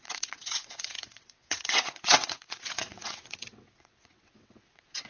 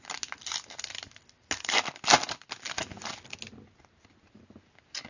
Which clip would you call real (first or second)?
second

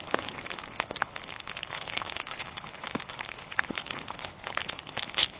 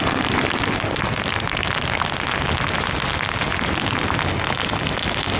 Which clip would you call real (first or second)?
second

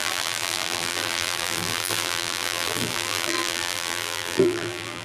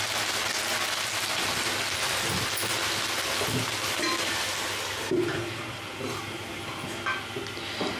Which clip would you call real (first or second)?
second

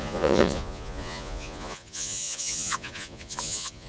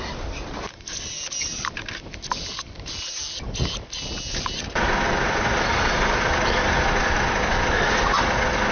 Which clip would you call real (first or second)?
second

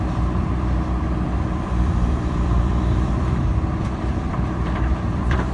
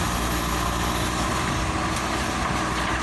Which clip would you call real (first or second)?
second